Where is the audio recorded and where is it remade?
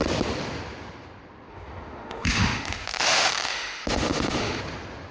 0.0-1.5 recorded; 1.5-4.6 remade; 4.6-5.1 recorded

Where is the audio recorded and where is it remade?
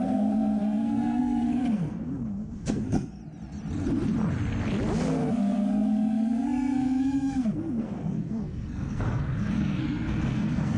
0.0-3.2 remade; 3.2-5.3 recorded; 5.3-10.8 remade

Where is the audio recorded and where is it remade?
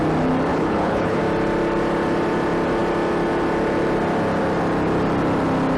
0.0-0.5 recorded; 0.5-1.2 remade; 1.2-5.8 recorded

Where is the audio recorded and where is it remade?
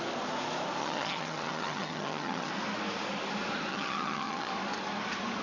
0.0-0.8 recorded; 0.8-2.5 remade; 2.5-3.7 recorded; 3.7-4.5 remade; 4.5-5.4 recorded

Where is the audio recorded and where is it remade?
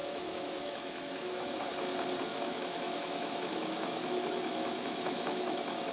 0.0-1.7 remade; 1.7-2.3 recorded; 2.3-5.9 remade